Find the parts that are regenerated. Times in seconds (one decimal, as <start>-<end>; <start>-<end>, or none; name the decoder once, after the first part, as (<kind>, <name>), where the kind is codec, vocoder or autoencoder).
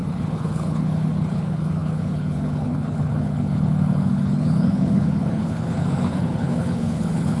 0.0-7.4 (codec, HILCodec)